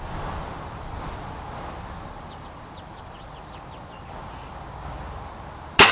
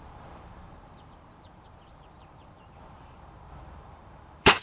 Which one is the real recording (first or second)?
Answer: first